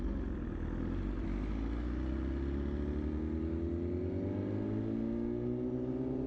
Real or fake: real